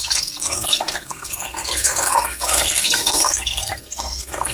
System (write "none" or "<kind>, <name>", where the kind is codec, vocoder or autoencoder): codec, SNAC